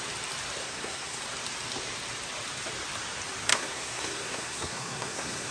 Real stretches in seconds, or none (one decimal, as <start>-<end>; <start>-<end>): 0.0-0.6; 1.2-3.5